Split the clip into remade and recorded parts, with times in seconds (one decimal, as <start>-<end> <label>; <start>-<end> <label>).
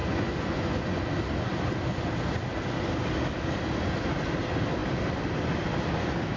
0.0-1.0 remade; 1.0-6.4 recorded